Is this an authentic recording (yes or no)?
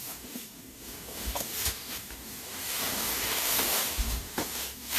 no